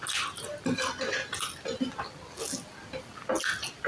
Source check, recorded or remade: recorded